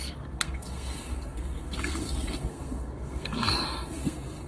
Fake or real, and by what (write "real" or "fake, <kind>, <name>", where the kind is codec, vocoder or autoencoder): fake, codec, SNAC